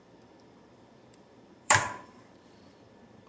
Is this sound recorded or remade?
remade